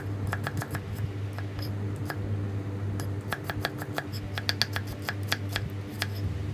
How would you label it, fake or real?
real